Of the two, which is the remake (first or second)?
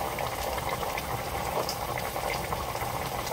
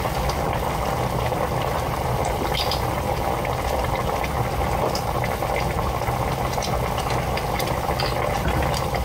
first